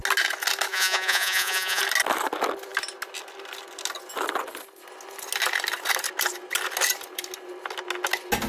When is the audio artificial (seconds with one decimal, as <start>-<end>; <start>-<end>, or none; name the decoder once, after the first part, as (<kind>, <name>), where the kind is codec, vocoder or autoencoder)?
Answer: 0.7-1.8 (vocoder, Vocos)